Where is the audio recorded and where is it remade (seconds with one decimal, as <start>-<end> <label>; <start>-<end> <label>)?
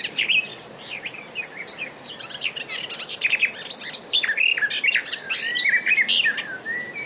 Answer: 0.0-7.1 recorded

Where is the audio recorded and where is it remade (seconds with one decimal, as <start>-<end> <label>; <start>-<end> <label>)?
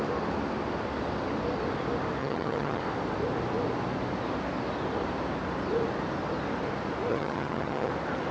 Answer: 0.0-2.2 recorded; 2.2-2.8 remade; 2.8-7.1 recorded; 7.1-7.9 remade; 7.9-8.3 recorded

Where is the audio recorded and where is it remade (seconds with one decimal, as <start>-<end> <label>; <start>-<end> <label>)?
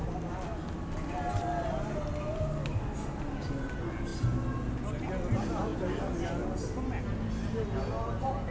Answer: 0.0-8.5 recorded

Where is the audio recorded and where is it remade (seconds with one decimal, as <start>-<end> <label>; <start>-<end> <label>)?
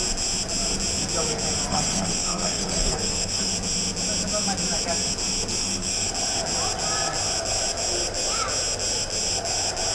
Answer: 0.0-1.7 recorded; 1.7-3.5 remade; 3.5-5.6 recorded; 5.6-6.1 remade; 6.1-9.9 recorded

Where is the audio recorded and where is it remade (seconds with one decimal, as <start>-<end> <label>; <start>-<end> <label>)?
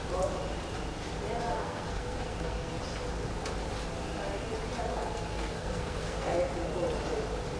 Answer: 0.0-1.5 recorded; 1.5-2.8 remade; 2.8-4.9 recorded; 4.9-6.4 remade; 6.4-7.6 recorded